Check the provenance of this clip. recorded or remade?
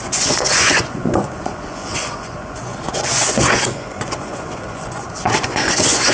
remade